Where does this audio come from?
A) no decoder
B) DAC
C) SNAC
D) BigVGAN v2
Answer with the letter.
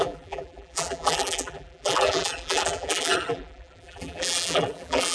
D